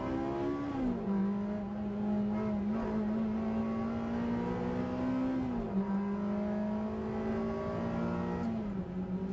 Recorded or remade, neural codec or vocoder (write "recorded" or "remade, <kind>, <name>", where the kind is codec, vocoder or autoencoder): recorded